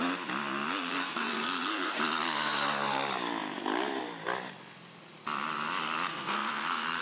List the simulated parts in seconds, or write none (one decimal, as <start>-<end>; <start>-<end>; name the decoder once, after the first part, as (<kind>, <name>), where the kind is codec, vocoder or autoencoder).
0.9-2.0 (codec, SNAC); 6.1-7.0